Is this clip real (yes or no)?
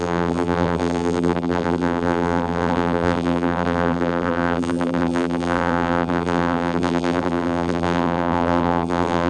no